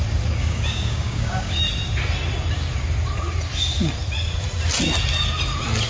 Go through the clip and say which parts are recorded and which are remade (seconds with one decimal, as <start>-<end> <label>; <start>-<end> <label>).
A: 0.0-0.4 recorded; 0.4-1.6 remade; 1.6-5.9 recorded